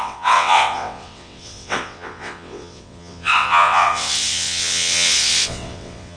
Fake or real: fake